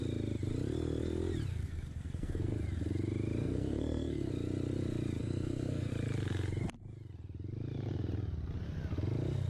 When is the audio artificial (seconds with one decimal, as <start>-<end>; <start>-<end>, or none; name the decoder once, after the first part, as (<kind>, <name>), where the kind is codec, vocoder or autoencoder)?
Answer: 1.5-2.6 (codec, SNAC); 3.4-4.3; 5.2-5.9